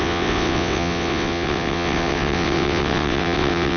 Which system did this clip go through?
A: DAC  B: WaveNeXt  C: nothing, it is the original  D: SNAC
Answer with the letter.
B